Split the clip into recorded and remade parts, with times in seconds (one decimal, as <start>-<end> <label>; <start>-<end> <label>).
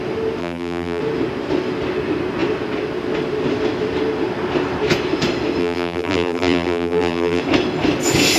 0.0-0.4 recorded; 0.4-1.0 remade; 1.0-5.6 recorded; 5.6-7.4 remade; 7.4-8.4 recorded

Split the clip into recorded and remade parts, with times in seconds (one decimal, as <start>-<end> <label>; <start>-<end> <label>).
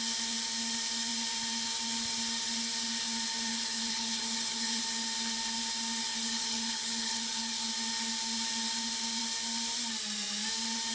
0.0-3.5 recorded; 3.5-4.8 remade; 4.8-6.1 recorded; 6.1-7.7 remade; 7.7-10.9 recorded